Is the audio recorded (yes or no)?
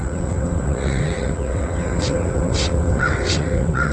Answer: no